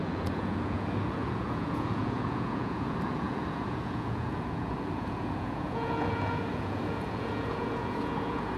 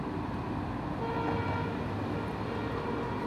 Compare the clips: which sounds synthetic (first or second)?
first